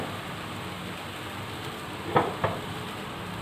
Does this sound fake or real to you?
real